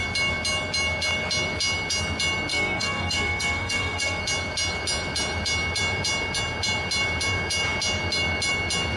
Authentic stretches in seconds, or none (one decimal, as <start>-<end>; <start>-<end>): 0.0-2.5; 4.2-9.0